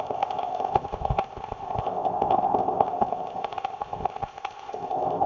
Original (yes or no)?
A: no